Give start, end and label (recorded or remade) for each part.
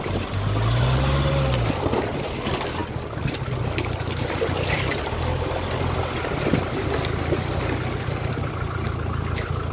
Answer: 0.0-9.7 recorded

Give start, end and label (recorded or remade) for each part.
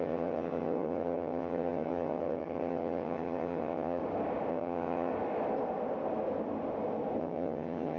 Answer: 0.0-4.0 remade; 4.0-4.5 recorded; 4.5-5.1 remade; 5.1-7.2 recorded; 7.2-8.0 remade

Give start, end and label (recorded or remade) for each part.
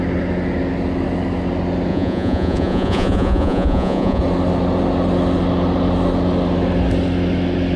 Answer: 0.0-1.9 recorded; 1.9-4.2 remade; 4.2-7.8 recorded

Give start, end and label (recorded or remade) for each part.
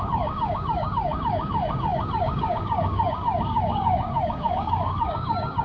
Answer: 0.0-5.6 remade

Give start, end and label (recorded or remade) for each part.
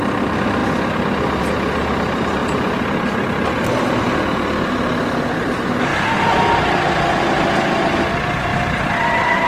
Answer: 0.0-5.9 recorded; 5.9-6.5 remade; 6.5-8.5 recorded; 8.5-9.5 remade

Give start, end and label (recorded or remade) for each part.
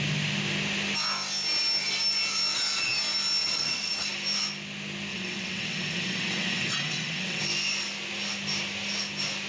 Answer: 0.0-3.4 recorded; 3.4-3.9 remade; 3.9-5.1 recorded; 5.1-7.4 remade; 7.4-9.5 recorded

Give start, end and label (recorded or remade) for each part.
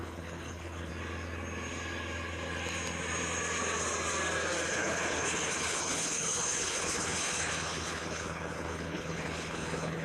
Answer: 0.0-0.9 remade; 0.9-4.7 recorded; 4.7-10.0 remade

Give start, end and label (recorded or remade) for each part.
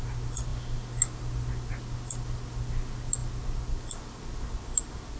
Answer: 0.0-5.2 recorded